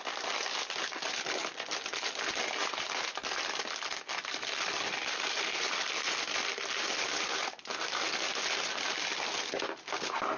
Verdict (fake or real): real